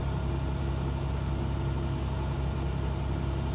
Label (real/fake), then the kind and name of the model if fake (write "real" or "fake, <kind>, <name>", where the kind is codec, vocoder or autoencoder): real